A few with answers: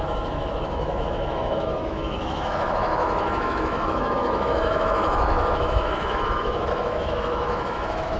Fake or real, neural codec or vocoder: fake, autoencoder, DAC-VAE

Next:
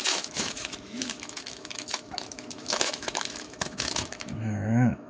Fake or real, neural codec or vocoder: fake, autoencoder, DAC-VAE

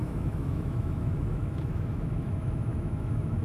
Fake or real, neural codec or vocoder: fake, autoencoder, DAC-VAE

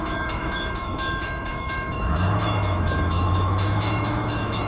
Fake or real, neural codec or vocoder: fake, autoencoder, DAC-VAE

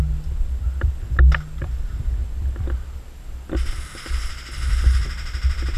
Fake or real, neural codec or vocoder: real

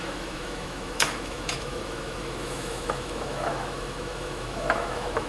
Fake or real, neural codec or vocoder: fake, autoencoder, DAC-VAE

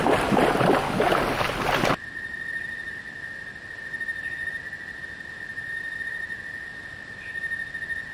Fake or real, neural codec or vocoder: real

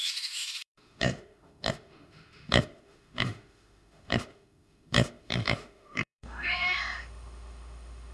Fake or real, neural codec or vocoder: fake, autoencoder, DAC-VAE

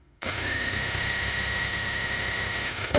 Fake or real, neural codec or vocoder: fake, autoencoder, DAC-VAE